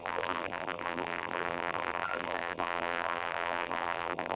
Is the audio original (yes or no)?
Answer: no